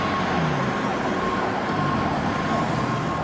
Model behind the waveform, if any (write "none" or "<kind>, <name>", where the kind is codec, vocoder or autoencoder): none